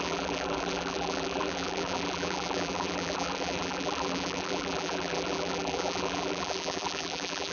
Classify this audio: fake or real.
fake